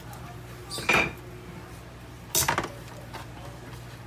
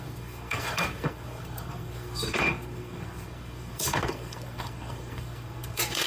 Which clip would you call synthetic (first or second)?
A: second